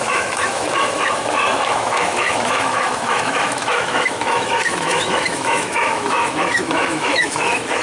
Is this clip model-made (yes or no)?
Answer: yes